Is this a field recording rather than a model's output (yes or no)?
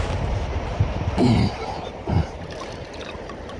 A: no